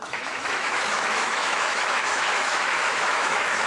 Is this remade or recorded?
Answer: remade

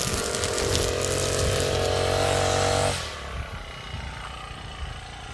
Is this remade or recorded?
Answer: recorded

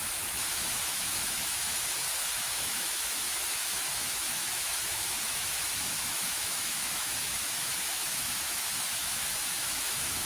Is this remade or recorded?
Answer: remade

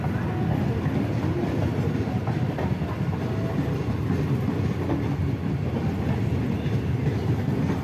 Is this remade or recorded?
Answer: recorded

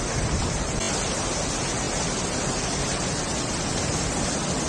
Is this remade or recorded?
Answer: recorded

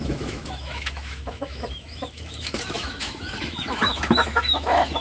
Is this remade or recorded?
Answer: remade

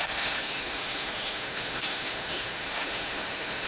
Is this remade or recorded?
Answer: remade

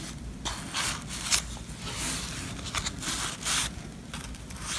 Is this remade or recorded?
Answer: recorded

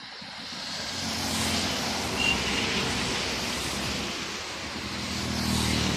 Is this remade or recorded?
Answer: recorded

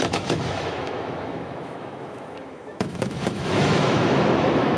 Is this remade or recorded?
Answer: remade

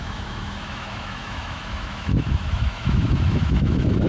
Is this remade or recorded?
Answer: remade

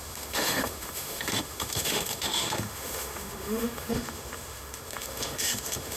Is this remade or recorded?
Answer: remade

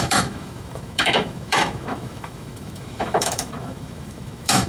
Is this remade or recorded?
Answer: remade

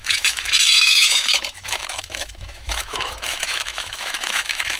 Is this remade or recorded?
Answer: remade